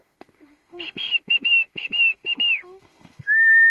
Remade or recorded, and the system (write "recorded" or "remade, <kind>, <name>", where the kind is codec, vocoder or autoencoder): remade, autoencoder, DAC-VAE